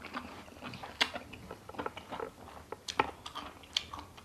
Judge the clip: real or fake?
real